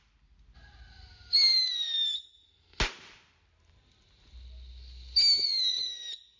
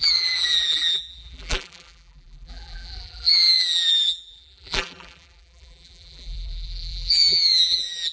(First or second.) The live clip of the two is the first